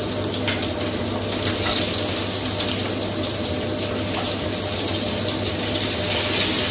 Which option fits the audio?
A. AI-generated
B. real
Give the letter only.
B